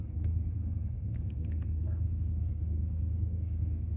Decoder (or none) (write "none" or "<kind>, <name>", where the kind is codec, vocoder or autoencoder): codec, SNAC